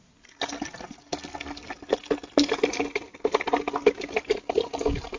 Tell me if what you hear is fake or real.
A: real